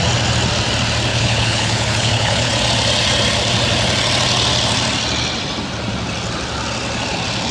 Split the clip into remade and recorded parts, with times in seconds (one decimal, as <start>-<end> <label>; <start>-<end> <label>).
0.0-1.1 recorded; 1.1-2.5 remade; 2.5-7.5 recorded